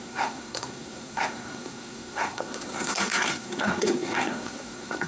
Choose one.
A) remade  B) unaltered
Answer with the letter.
A